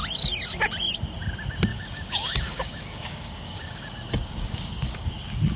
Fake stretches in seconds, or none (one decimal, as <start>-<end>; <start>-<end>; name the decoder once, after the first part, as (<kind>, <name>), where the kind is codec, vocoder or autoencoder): 1.7-5.1 (codec, DAC)